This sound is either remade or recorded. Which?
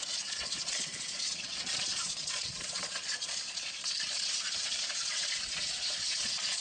remade